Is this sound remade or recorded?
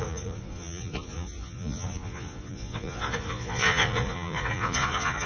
remade